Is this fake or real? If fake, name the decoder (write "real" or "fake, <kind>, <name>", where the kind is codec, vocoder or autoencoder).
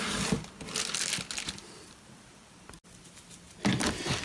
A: real